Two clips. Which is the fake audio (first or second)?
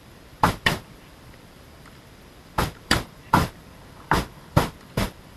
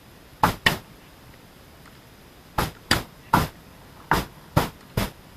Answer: first